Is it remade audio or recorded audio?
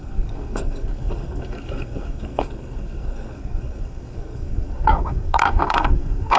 remade